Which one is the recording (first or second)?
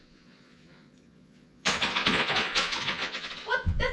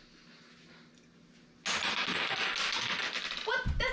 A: second